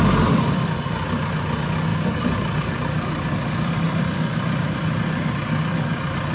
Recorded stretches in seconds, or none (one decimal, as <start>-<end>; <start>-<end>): 0.0-6.3